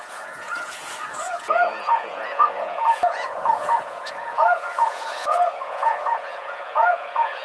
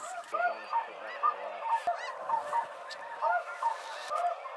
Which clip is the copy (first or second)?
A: first